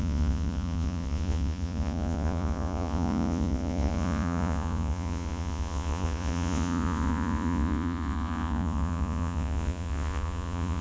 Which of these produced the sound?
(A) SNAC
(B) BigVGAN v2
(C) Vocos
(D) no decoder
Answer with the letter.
C